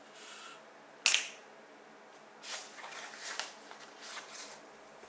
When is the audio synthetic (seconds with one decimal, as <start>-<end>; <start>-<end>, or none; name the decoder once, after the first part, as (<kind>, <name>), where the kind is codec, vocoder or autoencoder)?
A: none